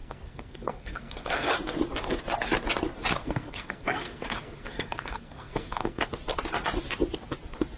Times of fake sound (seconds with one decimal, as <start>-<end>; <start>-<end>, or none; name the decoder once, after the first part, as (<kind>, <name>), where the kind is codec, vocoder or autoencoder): 0.0-1.5 (codec, SNAC); 3.2-6.1